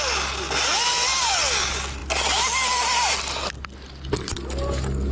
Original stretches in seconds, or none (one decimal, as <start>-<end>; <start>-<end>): 0.0-5.1